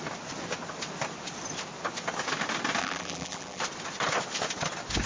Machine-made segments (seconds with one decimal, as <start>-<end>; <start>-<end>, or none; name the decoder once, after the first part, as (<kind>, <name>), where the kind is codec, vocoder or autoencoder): 2.8-3.6 (vocoder, BigVGAN v2)